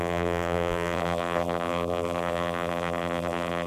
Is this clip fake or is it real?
fake